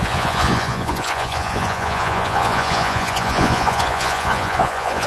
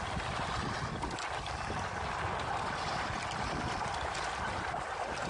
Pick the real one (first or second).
second